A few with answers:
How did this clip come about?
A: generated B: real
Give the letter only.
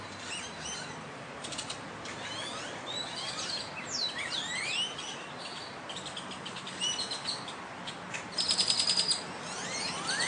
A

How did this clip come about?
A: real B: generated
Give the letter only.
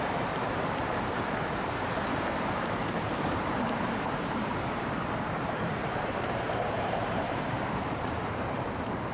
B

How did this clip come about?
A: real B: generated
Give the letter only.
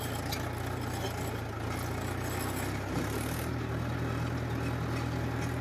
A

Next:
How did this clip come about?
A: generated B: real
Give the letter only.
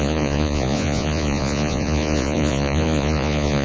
A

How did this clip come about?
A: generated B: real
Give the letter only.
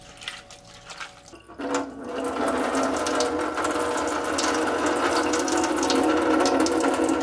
B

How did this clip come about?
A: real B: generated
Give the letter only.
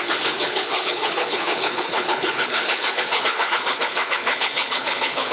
B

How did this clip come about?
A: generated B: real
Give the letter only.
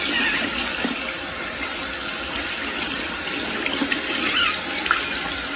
B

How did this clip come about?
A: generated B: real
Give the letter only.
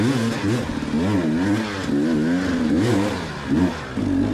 B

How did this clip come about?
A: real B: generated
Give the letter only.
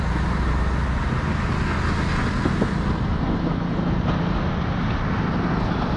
A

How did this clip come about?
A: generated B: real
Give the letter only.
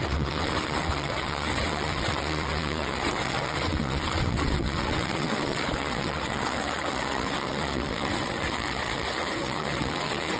A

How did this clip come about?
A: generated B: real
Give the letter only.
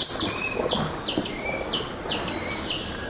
B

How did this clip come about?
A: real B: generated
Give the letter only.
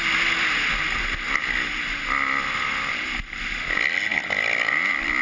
A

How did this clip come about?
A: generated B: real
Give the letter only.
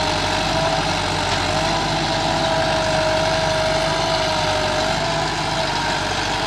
B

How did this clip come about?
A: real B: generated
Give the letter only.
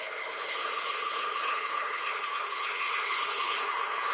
B